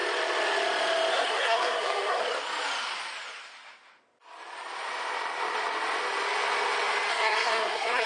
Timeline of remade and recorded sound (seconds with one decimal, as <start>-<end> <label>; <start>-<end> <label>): 0.0-1.1 recorded; 1.1-2.2 remade; 2.2-7.1 recorded; 7.1-8.1 remade